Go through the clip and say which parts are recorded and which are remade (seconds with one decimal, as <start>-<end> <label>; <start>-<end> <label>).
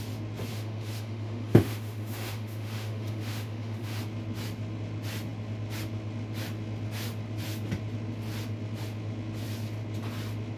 0.0-0.5 recorded; 0.5-4.0 remade; 4.0-10.6 recorded